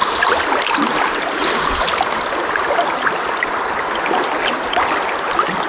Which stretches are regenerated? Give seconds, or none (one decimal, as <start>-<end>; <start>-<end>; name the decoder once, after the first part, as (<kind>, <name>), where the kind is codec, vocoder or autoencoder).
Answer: none